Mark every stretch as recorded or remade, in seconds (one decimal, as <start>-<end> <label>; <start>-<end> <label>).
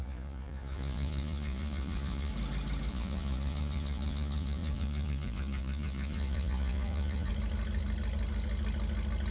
0.0-2.3 remade; 2.3-2.9 recorded; 2.9-7.3 remade; 7.3-9.3 recorded